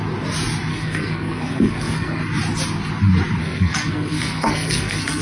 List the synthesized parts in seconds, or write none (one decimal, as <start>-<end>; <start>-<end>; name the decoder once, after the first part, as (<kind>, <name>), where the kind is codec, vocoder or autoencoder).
0.7-2.2 (codec, SNAC); 3.4-5.2